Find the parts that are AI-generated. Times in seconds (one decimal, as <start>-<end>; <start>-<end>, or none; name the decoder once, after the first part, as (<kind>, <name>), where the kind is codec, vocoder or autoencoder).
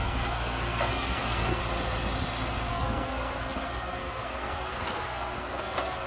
0.0-1.6 (codec, SNAC); 2.7-6.1